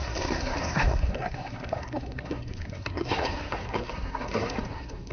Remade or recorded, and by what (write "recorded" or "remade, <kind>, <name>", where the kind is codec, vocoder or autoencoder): remade, codec, SNAC